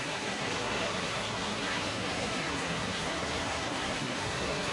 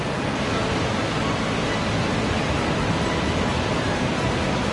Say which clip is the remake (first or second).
first